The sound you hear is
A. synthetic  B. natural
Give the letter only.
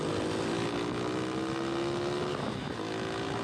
B